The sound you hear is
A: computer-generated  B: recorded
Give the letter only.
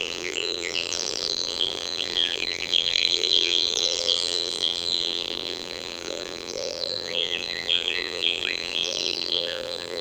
A